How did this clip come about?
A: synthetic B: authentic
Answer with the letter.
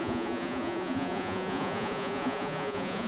A